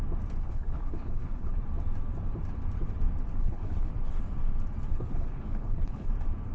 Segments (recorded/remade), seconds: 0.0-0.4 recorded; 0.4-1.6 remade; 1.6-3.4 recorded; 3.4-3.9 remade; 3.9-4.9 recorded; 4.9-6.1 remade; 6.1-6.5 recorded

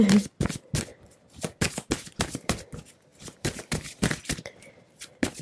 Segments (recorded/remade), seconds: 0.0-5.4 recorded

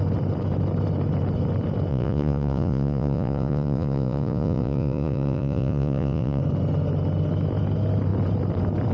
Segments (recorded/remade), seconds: 0.0-1.9 recorded; 1.9-6.4 remade; 6.4-8.9 recorded

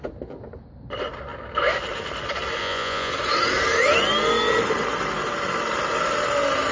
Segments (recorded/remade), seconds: 0.0-2.6 recorded; 2.6-3.1 remade; 3.1-6.7 recorded

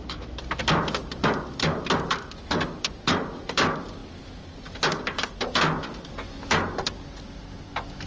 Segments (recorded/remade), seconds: 0.0-8.1 recorded